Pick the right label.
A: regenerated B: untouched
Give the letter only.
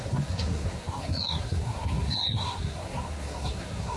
A